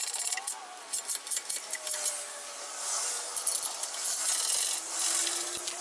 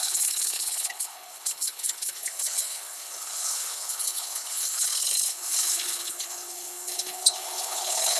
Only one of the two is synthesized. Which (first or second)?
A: second